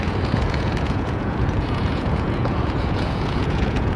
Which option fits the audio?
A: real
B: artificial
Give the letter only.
B